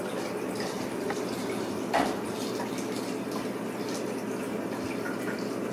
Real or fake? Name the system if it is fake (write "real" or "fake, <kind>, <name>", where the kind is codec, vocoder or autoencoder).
real